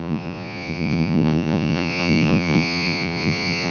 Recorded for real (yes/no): no